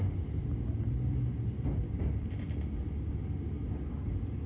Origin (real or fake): real